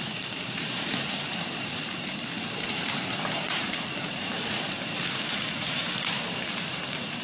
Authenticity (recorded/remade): remade